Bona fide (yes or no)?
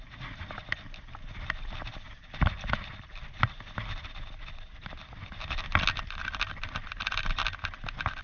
yes